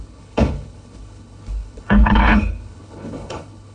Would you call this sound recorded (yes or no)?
no